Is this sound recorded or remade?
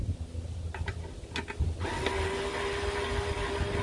recorded